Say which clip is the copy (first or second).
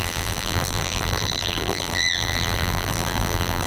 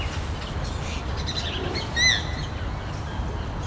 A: first